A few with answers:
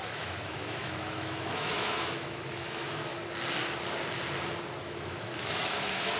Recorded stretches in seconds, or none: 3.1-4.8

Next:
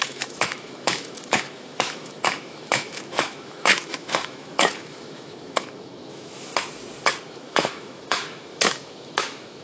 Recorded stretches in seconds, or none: 6.5-7.2

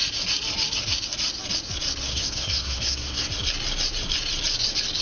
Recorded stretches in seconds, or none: 0.0-2.1; 3.3-5.0